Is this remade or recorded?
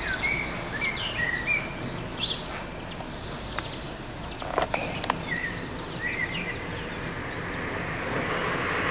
recorded